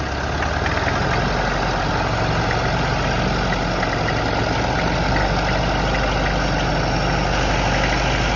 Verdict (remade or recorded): recorded